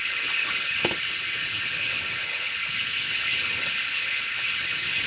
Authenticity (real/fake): fake